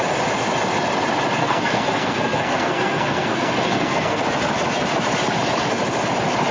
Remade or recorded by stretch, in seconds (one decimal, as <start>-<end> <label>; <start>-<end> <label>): 0.0-1.4 recorded; 1.4-4.2 remade; 4.2-6.5 recorded